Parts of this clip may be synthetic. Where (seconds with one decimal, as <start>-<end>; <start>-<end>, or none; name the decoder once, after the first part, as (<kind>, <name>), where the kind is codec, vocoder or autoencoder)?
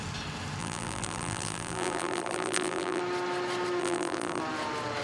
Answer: 0.6-3.0 (vocoder, BigVGAN v2); 3.8-4.4